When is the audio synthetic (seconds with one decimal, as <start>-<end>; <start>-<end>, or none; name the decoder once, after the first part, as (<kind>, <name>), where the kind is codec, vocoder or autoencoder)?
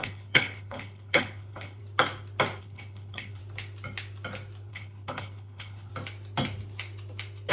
0.0-1.8 (codec, HILCodec); 2.6-3.4; 4.7-5.9